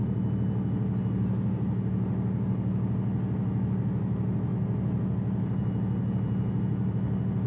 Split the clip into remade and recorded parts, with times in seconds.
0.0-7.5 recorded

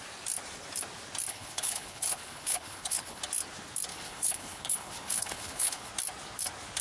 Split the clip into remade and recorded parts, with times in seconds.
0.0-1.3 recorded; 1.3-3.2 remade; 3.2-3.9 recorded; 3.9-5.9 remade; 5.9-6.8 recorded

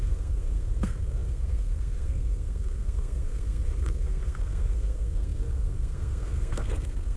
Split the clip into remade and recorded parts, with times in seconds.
0.0-7.2 remade